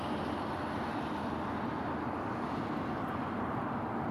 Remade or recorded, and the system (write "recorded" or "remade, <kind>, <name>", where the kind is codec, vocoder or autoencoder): recorded